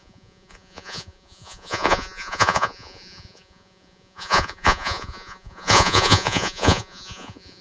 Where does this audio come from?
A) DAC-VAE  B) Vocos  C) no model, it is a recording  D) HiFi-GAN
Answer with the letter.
B